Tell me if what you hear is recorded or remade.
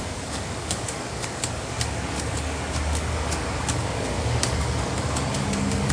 remade